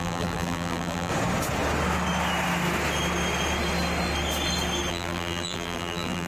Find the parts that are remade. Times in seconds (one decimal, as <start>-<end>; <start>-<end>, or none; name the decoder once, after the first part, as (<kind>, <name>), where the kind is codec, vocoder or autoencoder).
0.0-1.1 (vocoder, BigVGAN v2); 4.9-6.3